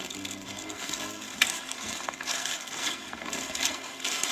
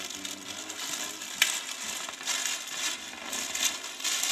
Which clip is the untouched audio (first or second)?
second